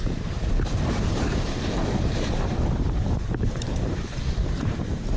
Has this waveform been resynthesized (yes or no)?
yes